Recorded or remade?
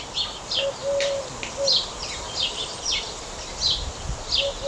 remade